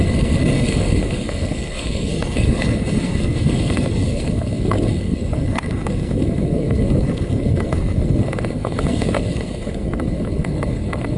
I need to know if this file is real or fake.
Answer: fake